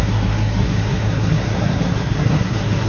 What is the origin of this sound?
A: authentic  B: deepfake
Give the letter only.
B